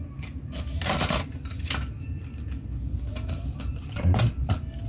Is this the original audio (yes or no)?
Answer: yes